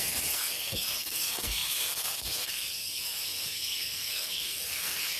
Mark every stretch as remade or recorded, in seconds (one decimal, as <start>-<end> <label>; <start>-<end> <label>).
0.0-5.2 remade